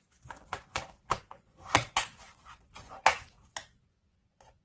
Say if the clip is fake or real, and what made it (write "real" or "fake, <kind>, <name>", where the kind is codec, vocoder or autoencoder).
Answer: fake, vocoder, Vocos